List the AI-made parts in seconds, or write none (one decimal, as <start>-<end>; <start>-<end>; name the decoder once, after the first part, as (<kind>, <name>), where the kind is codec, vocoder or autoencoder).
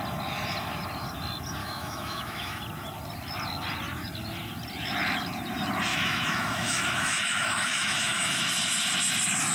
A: 1.6-2.6 (autoencoder, DAC-VAE); 5.9-8.4